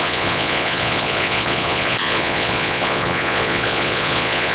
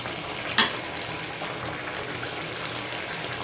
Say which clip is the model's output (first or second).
first